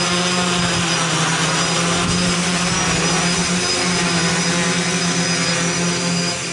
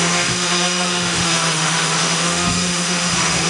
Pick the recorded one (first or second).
first